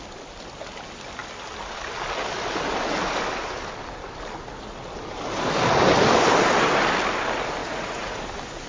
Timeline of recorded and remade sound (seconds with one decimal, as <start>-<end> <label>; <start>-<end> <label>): 0.0-7.6 recorded; 7.6-8.2 remade; 8.2-8.7 recorded